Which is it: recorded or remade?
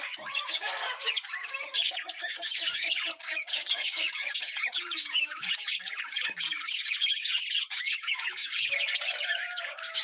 remade